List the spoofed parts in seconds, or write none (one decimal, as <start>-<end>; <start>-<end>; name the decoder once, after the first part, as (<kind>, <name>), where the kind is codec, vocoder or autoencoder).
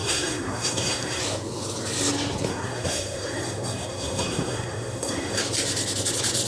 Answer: 0.0-1.2 (codec, SNAC); 2.5-5.4